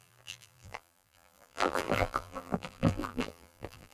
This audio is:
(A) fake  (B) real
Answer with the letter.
A